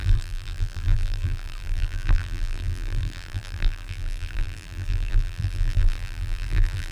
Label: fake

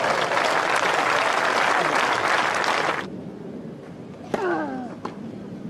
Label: real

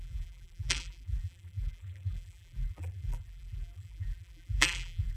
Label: fake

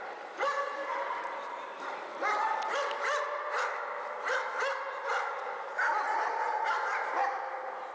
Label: real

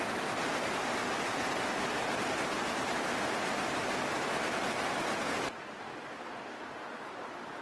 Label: real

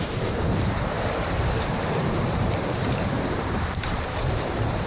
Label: fake